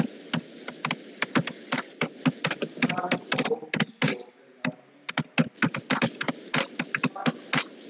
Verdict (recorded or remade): recorded